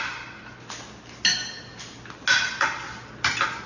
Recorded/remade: recorded